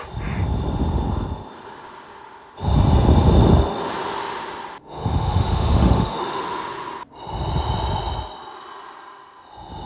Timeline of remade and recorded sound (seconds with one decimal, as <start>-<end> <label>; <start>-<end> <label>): 0.0-4.8 recorded; 4.8-6.4 remade; 6.4-9.9 recorded